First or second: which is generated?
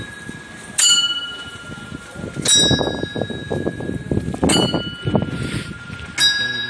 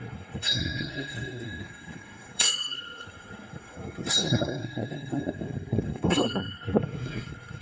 second